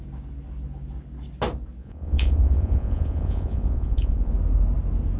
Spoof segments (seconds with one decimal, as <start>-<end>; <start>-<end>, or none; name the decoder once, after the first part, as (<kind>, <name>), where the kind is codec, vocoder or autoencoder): 1.8-4.3 (vocoder, Vocos)